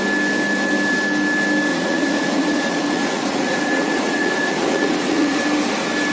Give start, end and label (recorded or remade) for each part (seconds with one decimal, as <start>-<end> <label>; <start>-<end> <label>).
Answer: 0.0-1.7 recorded; 1.7-5.4 remade; 5.4-6.1 recorded